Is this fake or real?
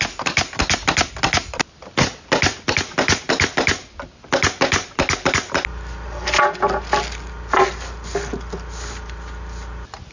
real